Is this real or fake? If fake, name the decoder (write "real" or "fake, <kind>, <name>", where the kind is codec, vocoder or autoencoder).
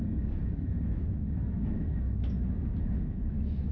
fake, autoencoder, DAC-VAE